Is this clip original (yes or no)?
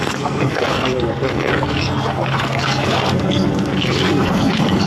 no